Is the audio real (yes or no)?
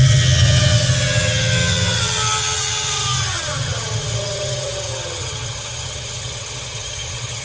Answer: no